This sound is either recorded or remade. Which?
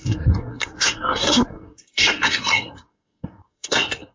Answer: remade